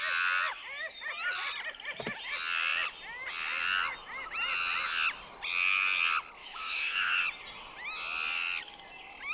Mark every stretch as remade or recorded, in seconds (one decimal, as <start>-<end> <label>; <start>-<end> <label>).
0.0-6.4 recorded; 6.4-7.2 remade; 7.2-9.3 recorded